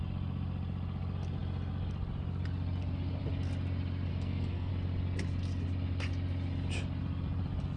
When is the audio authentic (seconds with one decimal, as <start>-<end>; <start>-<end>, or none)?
0.0-4.1; 4.7-7.8